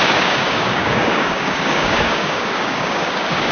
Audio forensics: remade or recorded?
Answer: remade